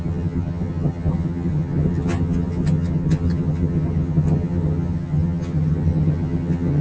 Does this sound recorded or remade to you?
remade